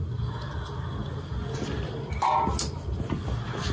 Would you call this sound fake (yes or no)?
no